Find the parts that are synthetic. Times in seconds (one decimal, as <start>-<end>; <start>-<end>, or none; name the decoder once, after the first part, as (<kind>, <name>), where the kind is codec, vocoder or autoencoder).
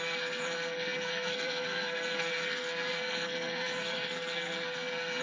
0.0-5.2 (codec, SNAC)